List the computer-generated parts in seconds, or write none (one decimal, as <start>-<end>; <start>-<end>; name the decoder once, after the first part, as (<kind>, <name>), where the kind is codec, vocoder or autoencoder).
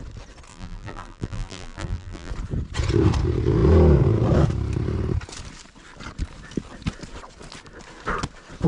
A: 0.5-2.3 (vocoder, BigVGAN v2)